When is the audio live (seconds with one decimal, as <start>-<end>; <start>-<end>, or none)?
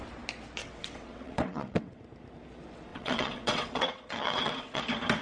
0.0-0.6; 2.0-2.9; 4.8-5.2